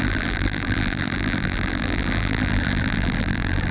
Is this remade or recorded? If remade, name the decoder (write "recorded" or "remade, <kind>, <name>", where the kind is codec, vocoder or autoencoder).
remade, vocoder, BigVGAN v2